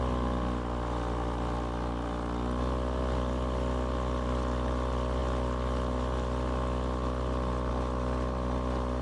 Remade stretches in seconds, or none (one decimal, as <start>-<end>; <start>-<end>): none